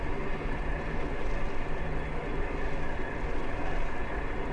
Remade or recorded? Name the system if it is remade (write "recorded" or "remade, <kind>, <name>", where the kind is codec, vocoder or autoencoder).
recorded